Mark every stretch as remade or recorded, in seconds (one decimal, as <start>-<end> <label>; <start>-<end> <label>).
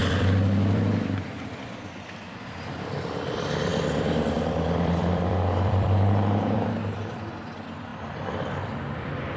0.0-9.4 remade